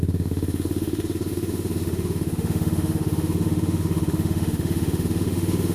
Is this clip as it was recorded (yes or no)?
no